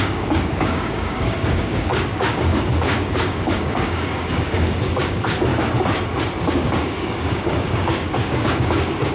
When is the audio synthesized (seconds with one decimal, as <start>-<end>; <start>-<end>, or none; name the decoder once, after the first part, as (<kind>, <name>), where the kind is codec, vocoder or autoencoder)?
0.0-5.5 (codec, DAC); 6.5-9.1